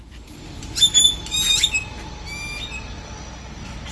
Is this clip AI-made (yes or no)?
no